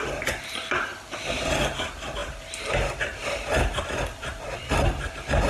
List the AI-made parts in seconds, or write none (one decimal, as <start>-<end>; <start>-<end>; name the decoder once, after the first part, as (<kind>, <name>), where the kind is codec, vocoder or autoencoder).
none